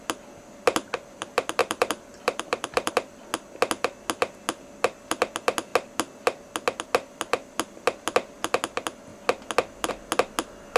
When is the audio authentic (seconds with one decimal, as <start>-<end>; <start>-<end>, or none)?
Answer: 0.0-1.6; 2.9-10.8